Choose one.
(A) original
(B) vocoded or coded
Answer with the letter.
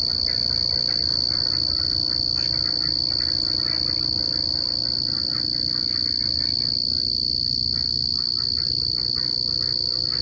A